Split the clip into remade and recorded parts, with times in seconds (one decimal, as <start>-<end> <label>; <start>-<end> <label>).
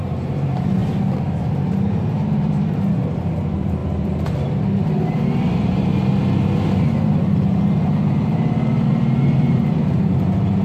0.0-0.8 remade; 0.8-1.4 recorded; 1.4-5.9 remade; 5.9-8.9 recorded; 8.9-10.6 remade